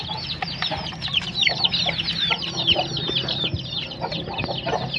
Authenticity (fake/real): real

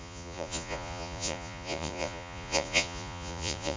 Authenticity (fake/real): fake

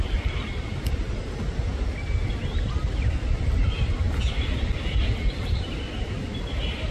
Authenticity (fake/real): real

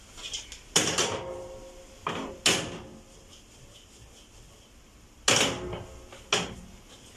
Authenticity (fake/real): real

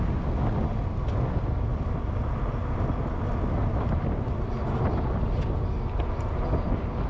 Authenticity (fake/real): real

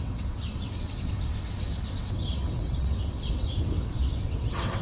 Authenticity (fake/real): fake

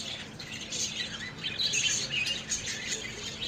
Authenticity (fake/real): real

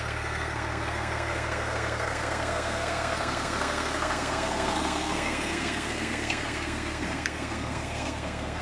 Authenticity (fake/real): fake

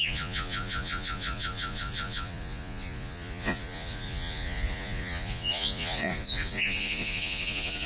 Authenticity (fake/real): fake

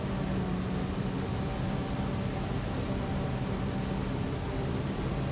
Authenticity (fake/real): real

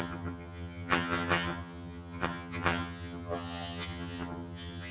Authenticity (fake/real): fake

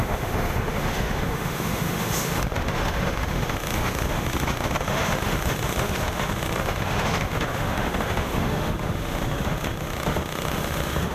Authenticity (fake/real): fake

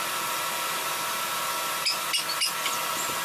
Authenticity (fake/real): real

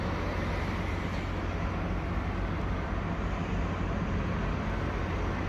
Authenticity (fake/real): real